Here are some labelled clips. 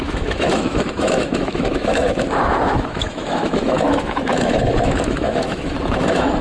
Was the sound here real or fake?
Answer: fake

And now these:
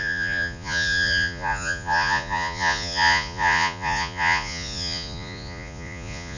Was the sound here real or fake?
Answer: fake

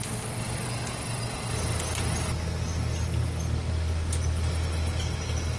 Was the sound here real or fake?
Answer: real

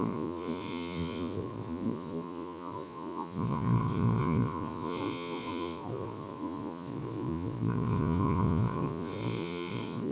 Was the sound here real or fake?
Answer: fake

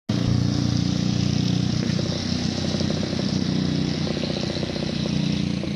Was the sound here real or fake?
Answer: real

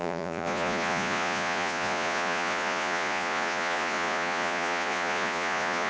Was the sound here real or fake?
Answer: fake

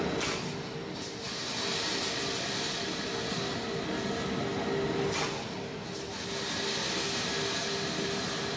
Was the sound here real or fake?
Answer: real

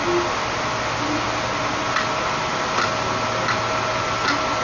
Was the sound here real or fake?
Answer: real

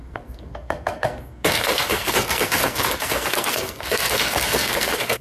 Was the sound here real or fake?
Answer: fake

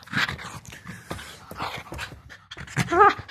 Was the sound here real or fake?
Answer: real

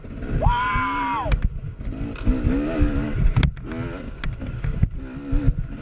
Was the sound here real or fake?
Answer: real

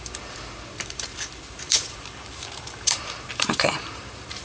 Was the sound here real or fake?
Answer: fake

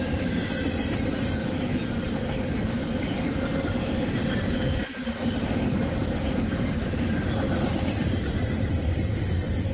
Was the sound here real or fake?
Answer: real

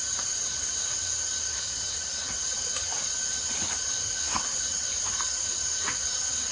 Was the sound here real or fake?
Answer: real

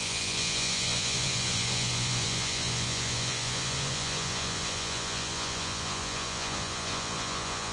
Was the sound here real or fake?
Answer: fake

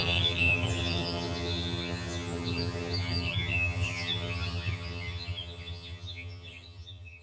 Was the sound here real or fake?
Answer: fake